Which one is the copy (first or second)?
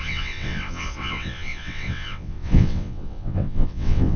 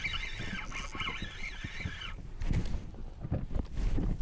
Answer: first